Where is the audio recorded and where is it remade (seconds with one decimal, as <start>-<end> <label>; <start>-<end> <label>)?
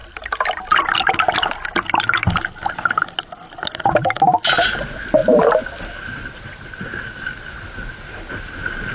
0.0-8.9 recorded